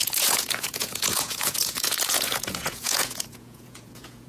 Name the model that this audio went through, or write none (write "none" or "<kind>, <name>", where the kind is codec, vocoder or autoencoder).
vocoder, Vocos